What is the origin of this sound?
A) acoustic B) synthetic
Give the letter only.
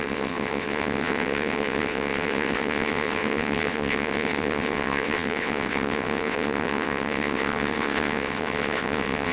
B